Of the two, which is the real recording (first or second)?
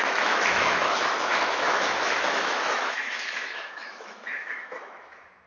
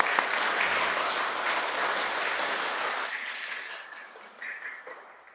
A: second